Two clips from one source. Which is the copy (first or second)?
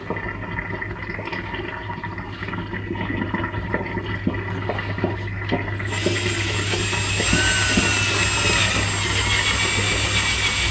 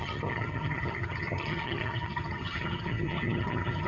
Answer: second